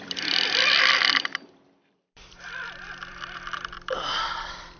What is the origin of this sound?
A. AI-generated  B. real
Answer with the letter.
A